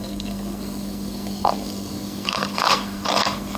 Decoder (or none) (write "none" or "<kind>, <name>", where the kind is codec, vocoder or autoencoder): codec, SNAC